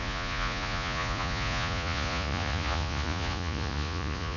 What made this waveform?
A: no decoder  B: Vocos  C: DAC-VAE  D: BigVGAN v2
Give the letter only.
B